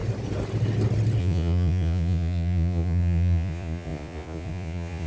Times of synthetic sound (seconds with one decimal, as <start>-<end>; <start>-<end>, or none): 1.2-5.1